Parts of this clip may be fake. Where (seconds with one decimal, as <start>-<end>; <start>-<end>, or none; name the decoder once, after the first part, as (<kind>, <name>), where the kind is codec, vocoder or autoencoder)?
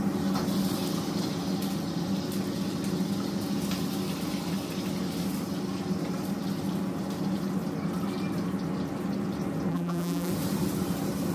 9.7-10.3 (vocoder, BigVGAN v2)